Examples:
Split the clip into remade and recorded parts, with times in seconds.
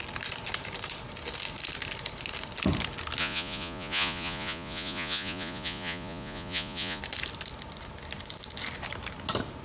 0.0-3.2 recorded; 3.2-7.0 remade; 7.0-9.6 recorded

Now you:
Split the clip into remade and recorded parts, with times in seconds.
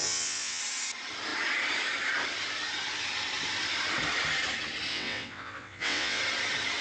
0.0-0.6 remade; 0.6-4.9 recorded; 4.9-6.2 remade; 6.2-6.8 recorded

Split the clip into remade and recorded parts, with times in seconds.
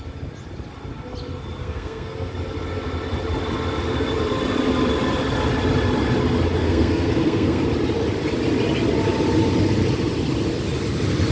0.0-1.6 recorded; 1.6-2.3 remade; 2.3-6.6 recorded; 6.6-7.6 remade; 7.6-11.3 recorded